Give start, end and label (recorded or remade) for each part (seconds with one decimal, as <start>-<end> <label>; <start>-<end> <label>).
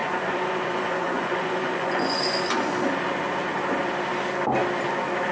0.0-2.7 remade; 2.7-5.3 recorded